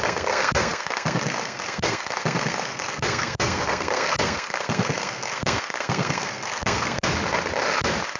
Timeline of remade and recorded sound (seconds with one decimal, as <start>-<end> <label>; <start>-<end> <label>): 0.0-7.1 remade; 7.1-8.2 recorded